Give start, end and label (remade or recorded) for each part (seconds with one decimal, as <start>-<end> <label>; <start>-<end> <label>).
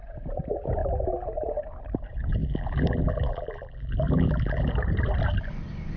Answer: 0.0-2.4 recorded; 2.4-4.7 remade; 4.7-6.0 recorded